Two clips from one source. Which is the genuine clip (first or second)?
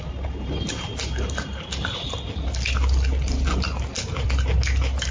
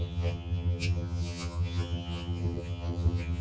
first